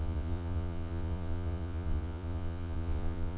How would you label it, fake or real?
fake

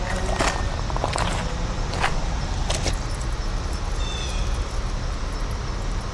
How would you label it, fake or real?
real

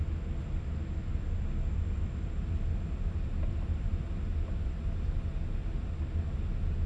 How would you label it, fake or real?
real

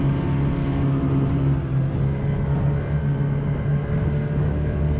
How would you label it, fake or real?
real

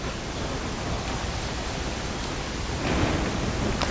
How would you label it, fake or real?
real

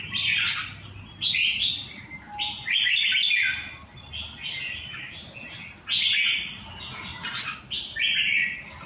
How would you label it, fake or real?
real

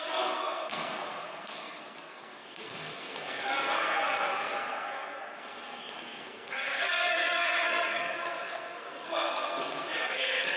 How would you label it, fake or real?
fake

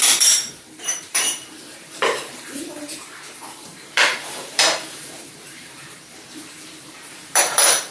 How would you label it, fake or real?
fake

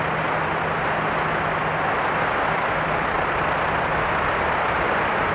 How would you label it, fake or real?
real